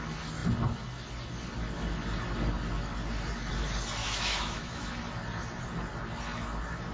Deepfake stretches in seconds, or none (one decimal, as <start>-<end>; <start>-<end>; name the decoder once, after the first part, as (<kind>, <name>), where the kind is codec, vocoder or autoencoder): 4.0-4.9 (autoencoder, DAC-VAE)